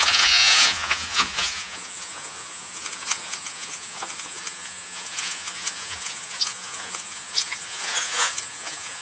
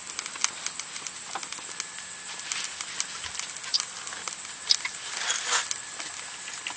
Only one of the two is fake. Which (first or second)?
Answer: first